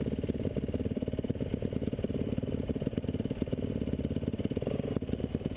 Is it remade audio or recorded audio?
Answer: recorded